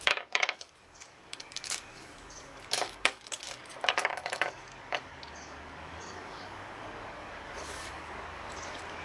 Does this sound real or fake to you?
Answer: fake